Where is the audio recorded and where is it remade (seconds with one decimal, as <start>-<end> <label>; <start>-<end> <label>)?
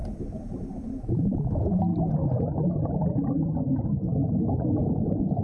0.0-4.8 recorded; 4.8-5.4 remade